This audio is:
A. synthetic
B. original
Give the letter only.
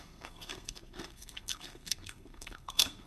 A